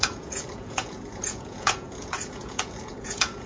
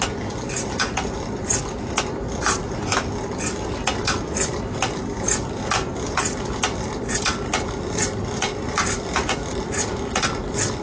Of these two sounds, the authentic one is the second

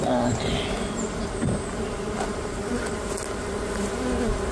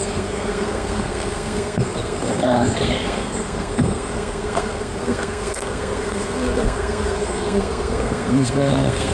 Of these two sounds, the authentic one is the first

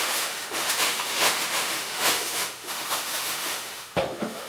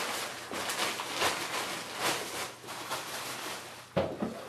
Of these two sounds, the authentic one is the second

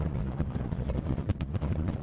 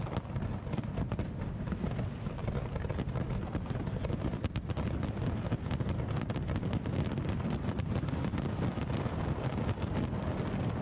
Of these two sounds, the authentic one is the second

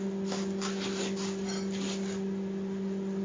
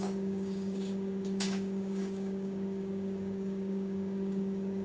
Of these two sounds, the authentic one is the first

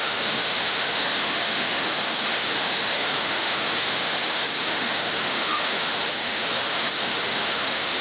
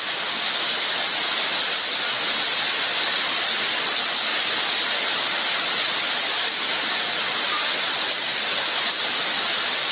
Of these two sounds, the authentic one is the second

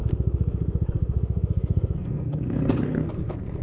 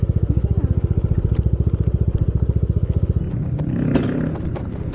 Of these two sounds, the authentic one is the second